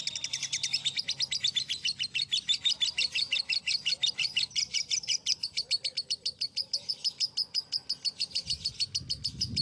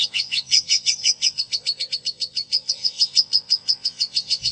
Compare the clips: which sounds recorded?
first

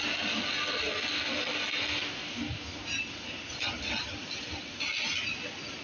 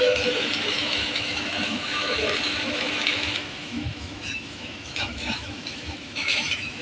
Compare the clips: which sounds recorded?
first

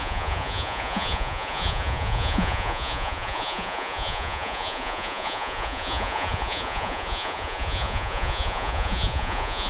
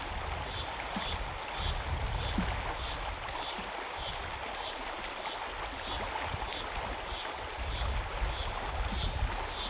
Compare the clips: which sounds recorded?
second